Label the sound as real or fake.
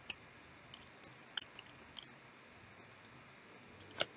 real